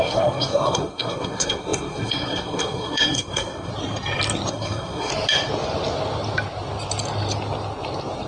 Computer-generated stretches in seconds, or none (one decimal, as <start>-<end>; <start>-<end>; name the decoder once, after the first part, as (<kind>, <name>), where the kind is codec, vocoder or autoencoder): 0.0-3.7 (codec, SNAC); 4.5-5.1

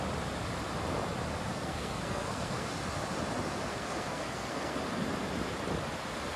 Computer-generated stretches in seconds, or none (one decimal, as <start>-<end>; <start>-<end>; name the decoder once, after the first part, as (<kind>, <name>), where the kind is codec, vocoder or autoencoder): 1.5-2.7 (codec, SNAC); 3.7-4.8

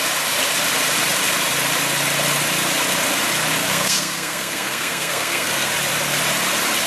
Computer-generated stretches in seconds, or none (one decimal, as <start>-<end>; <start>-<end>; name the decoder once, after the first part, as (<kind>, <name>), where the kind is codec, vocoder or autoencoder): 3.6-5.7 (codec, SNAC)

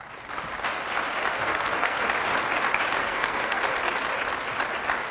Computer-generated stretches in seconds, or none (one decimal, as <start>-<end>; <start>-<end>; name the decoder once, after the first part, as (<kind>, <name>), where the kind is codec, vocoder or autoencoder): 1.3-2.1 (codec, SNAC); 3.0-3.6